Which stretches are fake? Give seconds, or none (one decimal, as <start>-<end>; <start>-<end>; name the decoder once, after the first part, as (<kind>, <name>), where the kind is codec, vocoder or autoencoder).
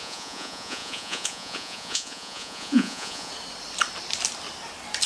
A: 0.0-3.3 (vocoder, Vocos)